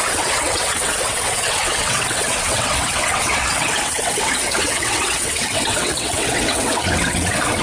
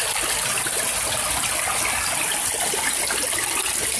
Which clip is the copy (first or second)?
first